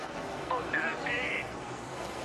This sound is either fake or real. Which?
fake